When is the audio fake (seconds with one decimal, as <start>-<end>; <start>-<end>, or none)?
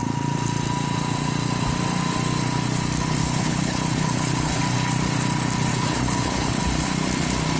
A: 3.2-4.6; 5.7-6.6